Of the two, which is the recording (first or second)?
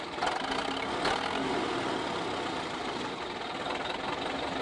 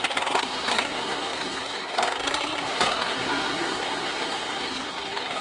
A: first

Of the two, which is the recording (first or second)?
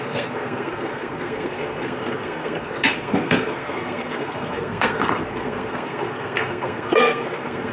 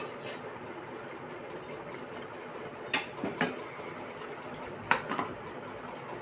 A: second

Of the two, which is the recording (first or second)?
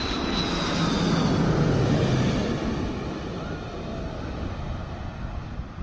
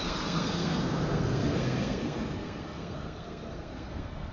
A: first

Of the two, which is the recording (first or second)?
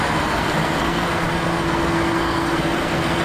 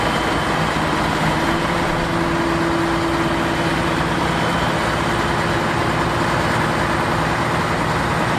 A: second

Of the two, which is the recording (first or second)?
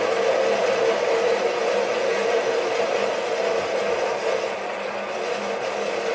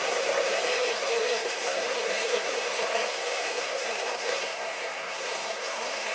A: first